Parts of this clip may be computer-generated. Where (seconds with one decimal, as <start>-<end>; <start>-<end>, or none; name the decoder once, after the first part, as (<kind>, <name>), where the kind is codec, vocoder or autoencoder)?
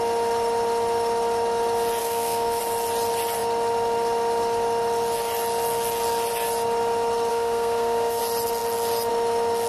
2.0-2.6 (codec, SNAC); 7.3-8.2